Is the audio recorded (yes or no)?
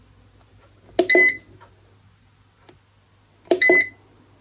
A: yes